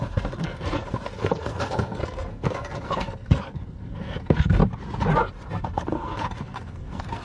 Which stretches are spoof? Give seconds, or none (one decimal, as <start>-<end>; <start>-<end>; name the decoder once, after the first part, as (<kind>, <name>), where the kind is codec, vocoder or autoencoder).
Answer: 0.0-4.6 (codec, SNAC); 5.5-7.2

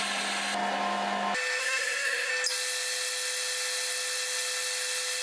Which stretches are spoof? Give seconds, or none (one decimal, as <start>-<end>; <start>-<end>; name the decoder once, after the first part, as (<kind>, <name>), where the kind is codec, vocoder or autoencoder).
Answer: 1.6-2.3 (codec, SNAC)

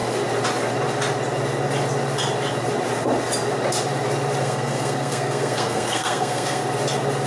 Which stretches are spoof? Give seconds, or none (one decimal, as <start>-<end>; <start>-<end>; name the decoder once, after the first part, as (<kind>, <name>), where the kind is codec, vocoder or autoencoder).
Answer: 4.4-6.6 (codec, SNAC)

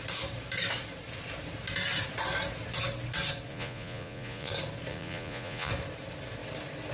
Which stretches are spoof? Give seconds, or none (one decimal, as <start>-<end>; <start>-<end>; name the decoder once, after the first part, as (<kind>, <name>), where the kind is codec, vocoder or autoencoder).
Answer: 3.5-4.5 (vocoder, Vocos); 4.9-5.7